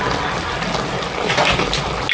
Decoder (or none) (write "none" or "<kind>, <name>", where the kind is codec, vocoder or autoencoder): none